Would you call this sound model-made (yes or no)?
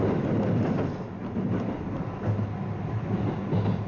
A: no